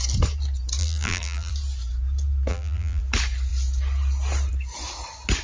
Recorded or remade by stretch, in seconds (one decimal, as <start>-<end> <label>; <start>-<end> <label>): 0.0-0.8 recorded; 0.8-1.5 remade; 1.5-2.5 recorded; 2.5-3.0 remade; 3.0-5.4 recorded